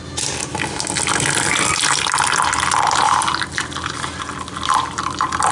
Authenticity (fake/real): real